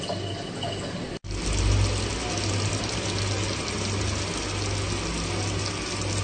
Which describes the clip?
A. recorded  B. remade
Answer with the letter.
A